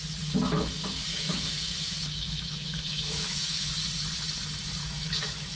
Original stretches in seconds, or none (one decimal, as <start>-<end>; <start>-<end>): 0.0-1.1; 3.7-4.8